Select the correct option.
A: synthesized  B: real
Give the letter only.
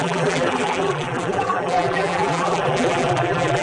A